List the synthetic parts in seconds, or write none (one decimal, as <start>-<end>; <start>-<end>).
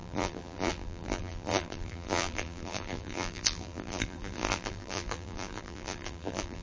0.0-6.6